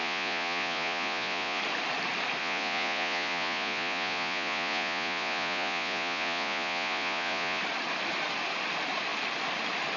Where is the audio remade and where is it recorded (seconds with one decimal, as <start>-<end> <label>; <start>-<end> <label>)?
0.0-1.6 remade; 1.6-2.4 recorded; 2.4-7.6 remade; 7.6-10.0 recorded